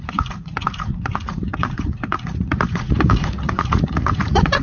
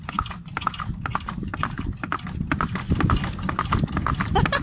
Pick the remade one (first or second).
first